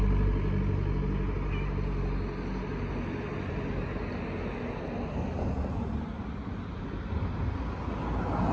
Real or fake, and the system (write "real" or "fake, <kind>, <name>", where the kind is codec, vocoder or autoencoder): real